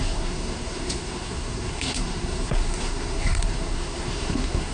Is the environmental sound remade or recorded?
remade